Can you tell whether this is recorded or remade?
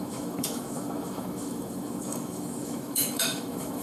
remade